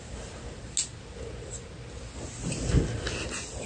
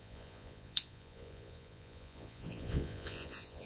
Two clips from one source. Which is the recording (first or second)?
first